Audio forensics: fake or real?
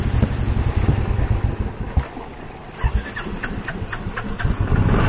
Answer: real